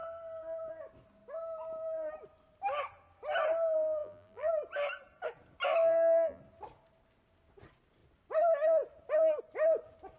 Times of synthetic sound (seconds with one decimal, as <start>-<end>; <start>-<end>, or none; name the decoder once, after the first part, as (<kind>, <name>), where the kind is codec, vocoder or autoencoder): 4.0-4.5 (vocoder, BigVGAN v2); 5.8-6.4